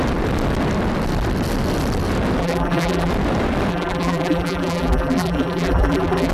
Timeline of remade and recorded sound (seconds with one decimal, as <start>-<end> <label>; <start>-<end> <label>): 0.0-2.4 recorded; 2.4-3.1 remade; 3.1-3.7 recorded; 3.7-6.3 remade